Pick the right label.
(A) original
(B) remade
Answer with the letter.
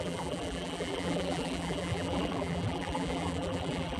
B